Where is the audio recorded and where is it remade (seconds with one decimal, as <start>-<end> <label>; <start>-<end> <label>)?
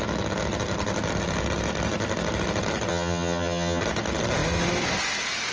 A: 0.0-2.9 recorded; 2.9-3.8 remade; 3.8-5.5 recorded